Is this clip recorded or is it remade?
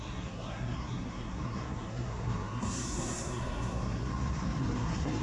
remade